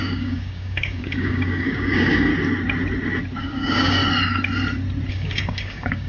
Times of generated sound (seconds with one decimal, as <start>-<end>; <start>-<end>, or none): 0.0-2.3; 3.4-4.0; 5.1-6.1